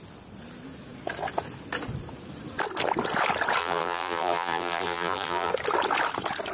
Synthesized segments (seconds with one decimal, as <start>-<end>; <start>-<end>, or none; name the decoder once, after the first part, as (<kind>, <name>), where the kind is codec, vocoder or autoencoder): 3.6-5.5 (vocoder, BigVGAN v2)